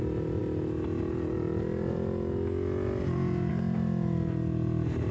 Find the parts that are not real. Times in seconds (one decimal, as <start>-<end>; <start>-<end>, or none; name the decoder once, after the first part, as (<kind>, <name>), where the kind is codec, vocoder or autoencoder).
none